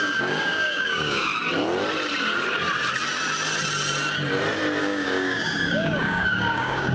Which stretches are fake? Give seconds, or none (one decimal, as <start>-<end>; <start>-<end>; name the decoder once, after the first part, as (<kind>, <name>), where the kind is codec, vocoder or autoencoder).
0.0-1.3 (codec, DAC); 4.8-6.9